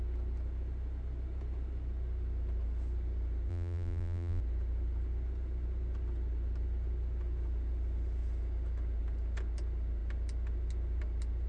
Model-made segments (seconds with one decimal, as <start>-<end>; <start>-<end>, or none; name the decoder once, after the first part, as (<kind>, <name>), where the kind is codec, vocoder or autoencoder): 3.5-4.4 (vocoder, BigVGAN v2)